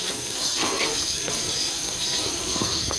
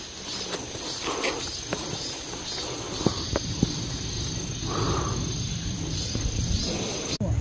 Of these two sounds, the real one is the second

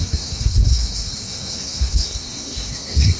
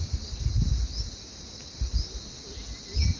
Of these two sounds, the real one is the second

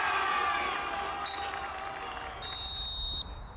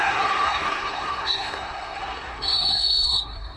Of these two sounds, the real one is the first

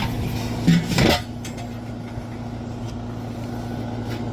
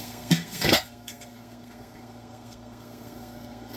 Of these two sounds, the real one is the first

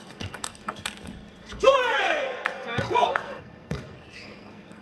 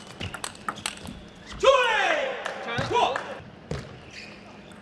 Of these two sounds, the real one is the second